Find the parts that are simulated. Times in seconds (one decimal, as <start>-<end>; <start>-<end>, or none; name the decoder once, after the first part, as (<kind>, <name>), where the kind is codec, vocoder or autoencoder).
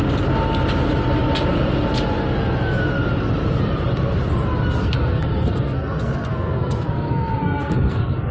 4.8-8.3 (codec, SNAC)